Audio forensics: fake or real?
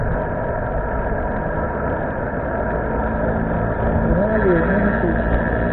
real